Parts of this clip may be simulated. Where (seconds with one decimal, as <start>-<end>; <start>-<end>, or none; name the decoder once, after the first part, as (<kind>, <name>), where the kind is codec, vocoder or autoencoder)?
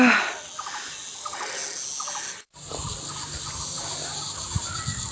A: none